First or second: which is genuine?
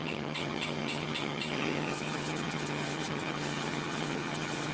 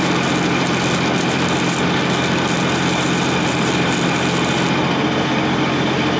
second